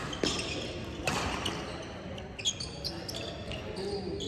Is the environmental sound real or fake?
real